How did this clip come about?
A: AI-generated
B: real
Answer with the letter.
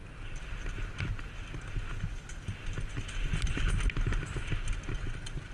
B